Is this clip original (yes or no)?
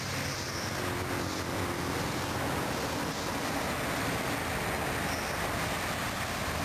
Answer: yes